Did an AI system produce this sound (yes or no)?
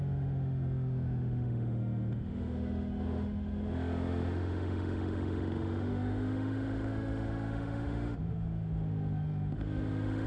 yes